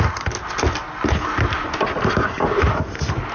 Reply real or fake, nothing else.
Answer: real